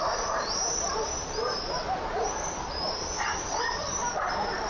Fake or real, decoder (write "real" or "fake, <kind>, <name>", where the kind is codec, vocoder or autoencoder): fake, vocoder, BigVGAN v2